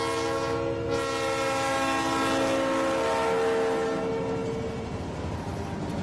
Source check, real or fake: real